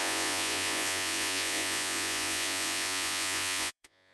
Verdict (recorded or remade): remade